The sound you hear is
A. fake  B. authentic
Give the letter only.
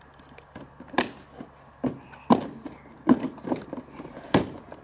B